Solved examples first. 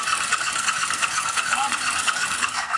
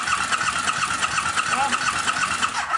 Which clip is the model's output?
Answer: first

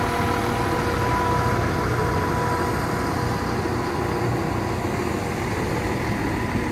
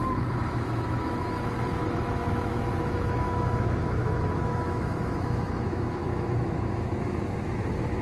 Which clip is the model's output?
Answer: second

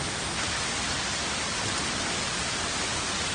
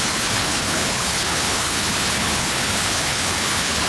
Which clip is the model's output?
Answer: second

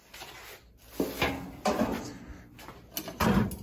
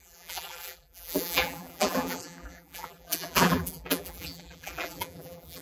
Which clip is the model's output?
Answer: second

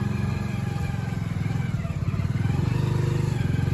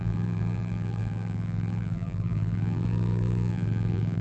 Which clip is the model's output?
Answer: second